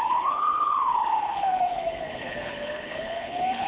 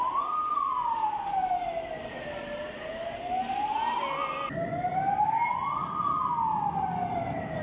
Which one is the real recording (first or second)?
second